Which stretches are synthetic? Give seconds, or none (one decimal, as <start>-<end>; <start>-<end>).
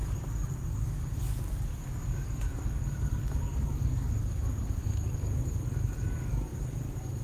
0.0-7.2